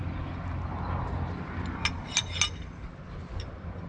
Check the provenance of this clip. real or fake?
real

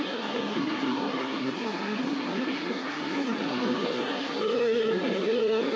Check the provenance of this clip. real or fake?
fake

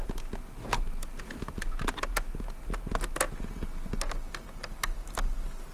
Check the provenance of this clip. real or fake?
real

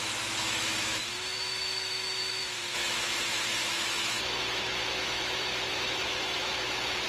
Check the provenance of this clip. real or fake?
fake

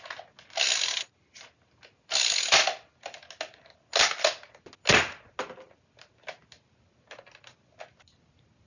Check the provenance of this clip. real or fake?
real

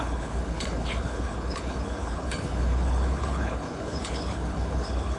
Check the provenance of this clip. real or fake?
fake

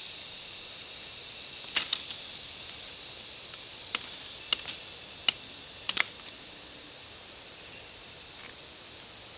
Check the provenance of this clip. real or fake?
real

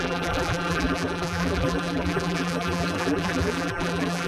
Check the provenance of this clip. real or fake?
fake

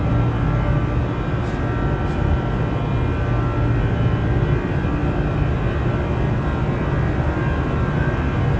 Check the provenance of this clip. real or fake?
real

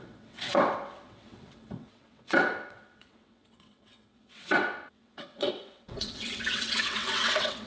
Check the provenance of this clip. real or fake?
fake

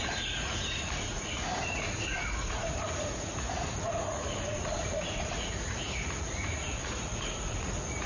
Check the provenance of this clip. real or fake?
fake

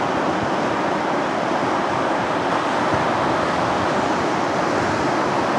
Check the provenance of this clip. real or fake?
real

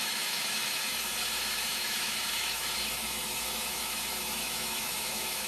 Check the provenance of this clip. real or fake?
fake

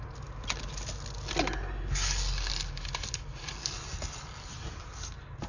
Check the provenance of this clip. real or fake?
real